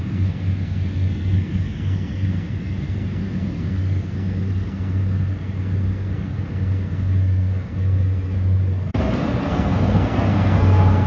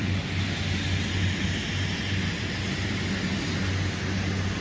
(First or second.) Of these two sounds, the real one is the second